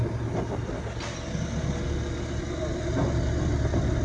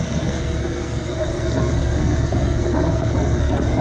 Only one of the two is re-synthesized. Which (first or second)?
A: second